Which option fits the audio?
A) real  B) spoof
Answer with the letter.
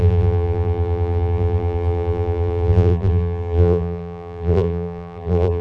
B